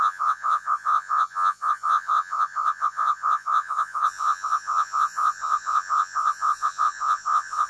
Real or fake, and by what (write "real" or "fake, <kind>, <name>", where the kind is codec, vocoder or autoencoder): fake, vocoder, Vocos